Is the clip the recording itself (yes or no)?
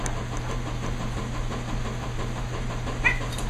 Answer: yes